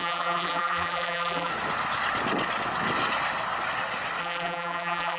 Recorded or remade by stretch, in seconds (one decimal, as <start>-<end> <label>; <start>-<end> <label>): 0.0-1.5 remade; 1.5-4.2 recorded; 4.2-5.2 remade